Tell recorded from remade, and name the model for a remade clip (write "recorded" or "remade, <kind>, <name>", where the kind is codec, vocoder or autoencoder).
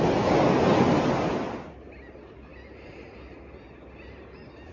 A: recorded